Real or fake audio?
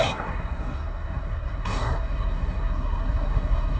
fake